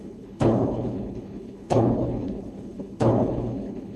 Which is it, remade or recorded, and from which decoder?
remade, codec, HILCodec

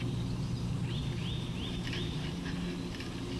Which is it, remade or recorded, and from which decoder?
recorded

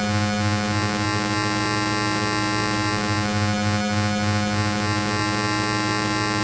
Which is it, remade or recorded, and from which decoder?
recorded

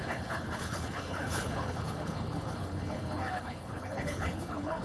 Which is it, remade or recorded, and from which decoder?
remade, codec, HILCodec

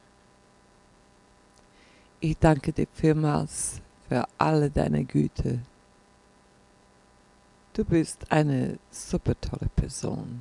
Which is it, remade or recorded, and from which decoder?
recorded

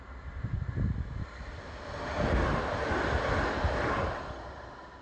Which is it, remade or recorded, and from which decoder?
recorded